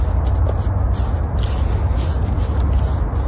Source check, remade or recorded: recorded